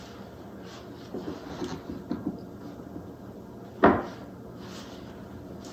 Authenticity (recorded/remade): recorded